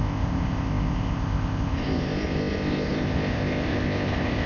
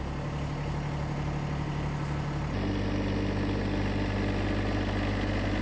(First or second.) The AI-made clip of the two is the first